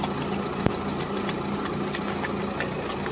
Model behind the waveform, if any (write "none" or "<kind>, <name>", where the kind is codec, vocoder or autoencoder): none